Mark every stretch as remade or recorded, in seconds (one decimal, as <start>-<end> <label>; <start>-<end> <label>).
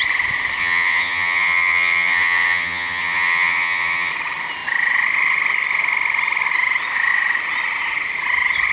0.0-0.6 recorded; 0.6-4.1 remade; 4.1-8.7 recorded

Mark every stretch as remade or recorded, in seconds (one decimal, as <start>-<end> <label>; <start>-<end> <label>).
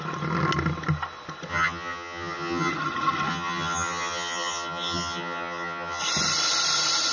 0.0-1.5 recorded; 1.5-2.7 remade; 2.7-3.3 recorded; 3.3-6.0 remade; 6.0-7.1 recorded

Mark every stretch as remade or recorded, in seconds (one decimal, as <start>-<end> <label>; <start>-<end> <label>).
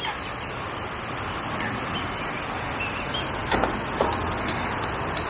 0.0-5.3 recorded